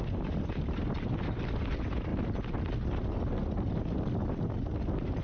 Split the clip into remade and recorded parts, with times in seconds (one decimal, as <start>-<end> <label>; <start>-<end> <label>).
0.0-5.2 recorded